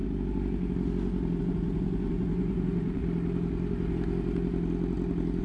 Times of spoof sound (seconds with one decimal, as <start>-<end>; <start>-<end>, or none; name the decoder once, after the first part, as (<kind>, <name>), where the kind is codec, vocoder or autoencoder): 1.4-3.0 (vocoder, Vocos)